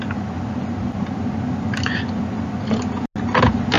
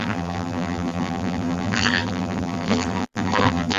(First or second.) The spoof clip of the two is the second